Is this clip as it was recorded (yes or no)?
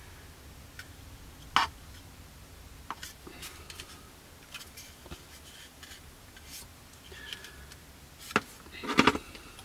yes